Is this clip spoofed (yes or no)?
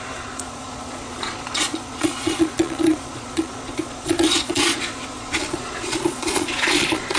yes